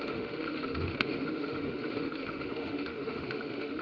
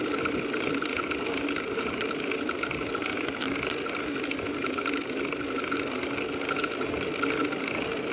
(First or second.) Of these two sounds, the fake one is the first